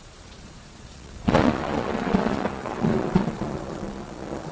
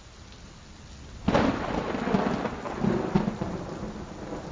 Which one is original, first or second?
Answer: second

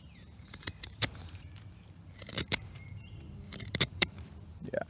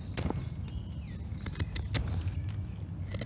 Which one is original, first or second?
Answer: second